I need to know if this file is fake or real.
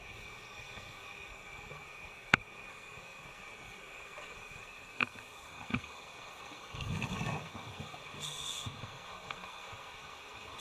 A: fake